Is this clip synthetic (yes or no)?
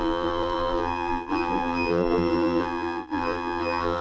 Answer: yes